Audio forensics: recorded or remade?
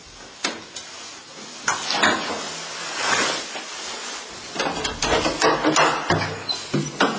recorded